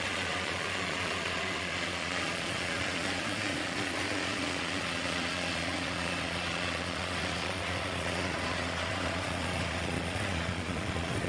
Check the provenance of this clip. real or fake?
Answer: fake